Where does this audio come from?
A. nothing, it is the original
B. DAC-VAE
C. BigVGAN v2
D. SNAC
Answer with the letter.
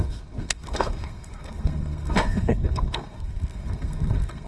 D